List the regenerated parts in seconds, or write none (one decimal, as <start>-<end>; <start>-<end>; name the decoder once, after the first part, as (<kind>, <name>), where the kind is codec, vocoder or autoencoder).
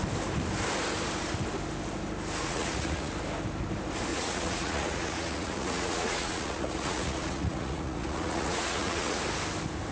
2.4-3.1 (vocoder, Vocos); 4.1-9.2